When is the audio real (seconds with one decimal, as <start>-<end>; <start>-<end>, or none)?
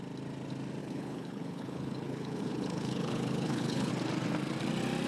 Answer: 0.0-0.8; 3.9-5.1